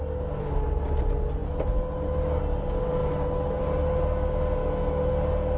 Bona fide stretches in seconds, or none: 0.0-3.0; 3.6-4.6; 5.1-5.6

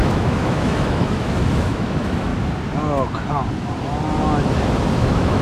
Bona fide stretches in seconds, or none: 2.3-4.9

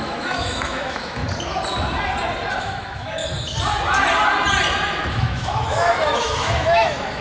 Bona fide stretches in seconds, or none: 1.2-2.6; 3.2-5.1

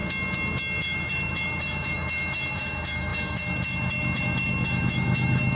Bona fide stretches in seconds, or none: 0.0-0.8

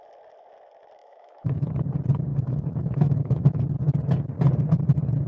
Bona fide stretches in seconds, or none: 0.0-1.0; 1.7-2.3; 3.6-5.3

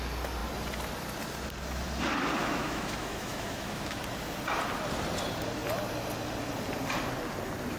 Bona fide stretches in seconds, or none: 0.0-2.4; 4.0-7.8

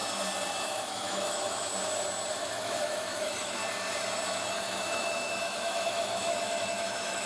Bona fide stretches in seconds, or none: 0.0-0.6; 1.7-2.3; 3.6-4.4